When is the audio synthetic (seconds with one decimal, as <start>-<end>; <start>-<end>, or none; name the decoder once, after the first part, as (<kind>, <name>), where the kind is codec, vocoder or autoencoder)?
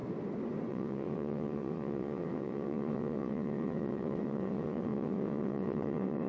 0.7-6.3 (vocoder, WaveNeXt)